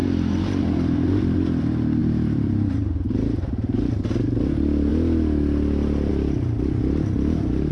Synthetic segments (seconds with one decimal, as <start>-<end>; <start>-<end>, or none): 0.0-0.6; 2.0-4.0